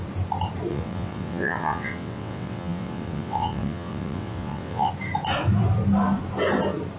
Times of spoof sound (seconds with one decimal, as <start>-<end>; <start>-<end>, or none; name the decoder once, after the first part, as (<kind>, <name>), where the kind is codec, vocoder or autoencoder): 0.7-4.9 (vocoder, WaveNeXt)